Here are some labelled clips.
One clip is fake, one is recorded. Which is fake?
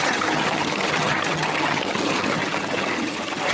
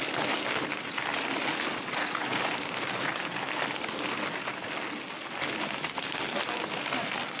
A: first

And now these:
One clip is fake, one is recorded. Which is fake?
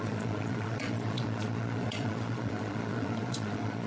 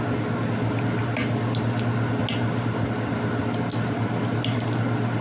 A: first